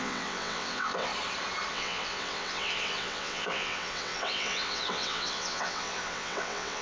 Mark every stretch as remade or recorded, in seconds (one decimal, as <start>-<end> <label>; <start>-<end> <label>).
0.0-1.1 remade; 1.1-1.7 recorded; 1.7-6.8 remade